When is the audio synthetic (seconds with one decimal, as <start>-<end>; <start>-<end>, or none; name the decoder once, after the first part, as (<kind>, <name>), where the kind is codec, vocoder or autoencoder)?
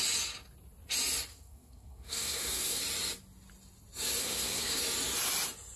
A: 1.3-2.8 (codec, SNAC); 4.2-4.8